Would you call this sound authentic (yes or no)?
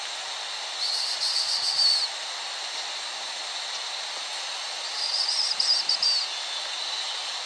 yes